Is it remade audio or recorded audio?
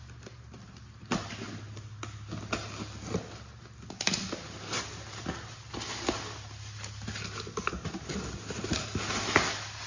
recorded